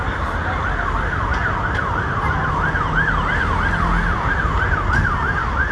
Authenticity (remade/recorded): recorded